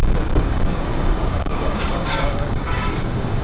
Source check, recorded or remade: remade